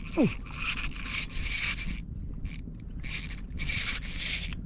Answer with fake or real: real